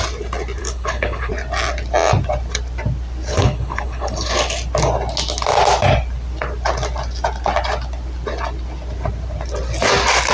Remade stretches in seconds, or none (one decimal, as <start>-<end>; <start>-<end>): 0.6-1.3; 3.3-4.3